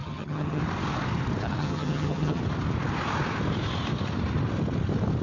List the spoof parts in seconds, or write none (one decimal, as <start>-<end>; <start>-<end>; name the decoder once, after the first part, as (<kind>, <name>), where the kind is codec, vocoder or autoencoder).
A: 0.0-0.6 (vocoder, HiFi-GAN); 1.6-2.4